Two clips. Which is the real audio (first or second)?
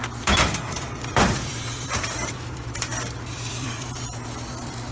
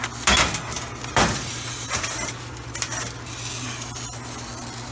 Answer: second